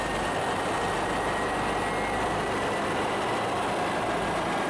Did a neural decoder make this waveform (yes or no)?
no